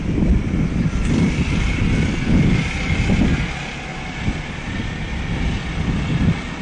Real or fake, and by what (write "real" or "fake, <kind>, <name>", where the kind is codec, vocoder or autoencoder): real